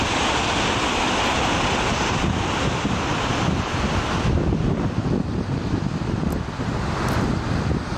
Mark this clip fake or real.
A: real